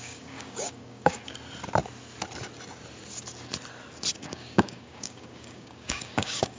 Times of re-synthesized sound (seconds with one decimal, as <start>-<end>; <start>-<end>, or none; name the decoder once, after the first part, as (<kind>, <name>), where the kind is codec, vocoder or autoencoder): 0.0-1.2 (codec, DAC); 4.2-6.6

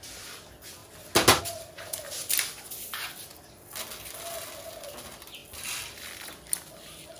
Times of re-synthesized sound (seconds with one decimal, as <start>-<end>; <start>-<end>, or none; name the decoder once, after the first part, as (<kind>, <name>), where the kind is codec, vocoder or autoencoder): none

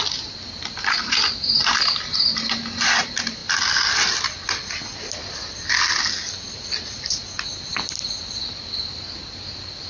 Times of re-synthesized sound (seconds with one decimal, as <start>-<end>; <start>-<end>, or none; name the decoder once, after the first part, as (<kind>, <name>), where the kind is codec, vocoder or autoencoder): none

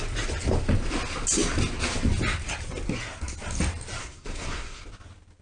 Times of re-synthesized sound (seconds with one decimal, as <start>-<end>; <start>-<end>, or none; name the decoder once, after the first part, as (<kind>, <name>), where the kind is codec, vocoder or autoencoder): 4.0-4.8 (codec, SNAC)

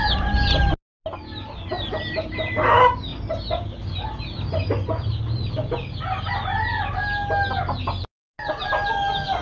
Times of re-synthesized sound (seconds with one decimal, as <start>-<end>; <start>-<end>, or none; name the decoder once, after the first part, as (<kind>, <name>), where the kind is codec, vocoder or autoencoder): none

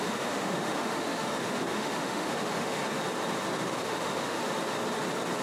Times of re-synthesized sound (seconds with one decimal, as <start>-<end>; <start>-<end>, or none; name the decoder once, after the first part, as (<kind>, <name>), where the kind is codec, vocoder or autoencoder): 0.0-2.8 (autoencoder, DAC-VAE); 3.6-4.4

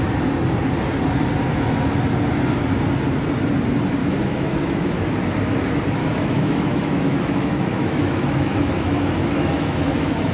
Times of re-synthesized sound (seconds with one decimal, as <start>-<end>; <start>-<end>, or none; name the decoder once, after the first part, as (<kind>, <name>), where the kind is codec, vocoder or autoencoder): 4.0-4.9 (autoencoder, DAC-VAE); 6.0-10.3

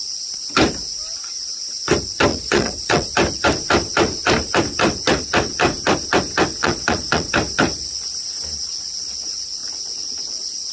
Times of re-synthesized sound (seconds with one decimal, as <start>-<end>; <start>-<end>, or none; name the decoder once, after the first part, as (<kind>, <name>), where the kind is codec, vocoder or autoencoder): 2.3-3.1 (vocoder, Vocos); 6.6-7.3